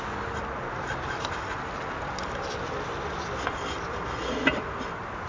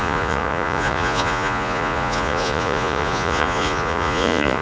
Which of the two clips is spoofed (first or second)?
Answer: second